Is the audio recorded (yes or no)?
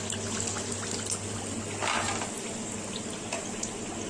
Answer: yes